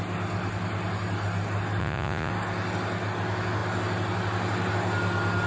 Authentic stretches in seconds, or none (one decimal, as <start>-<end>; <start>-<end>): 0.0-1.8; 2.3-5.5